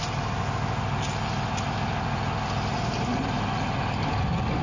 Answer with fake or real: real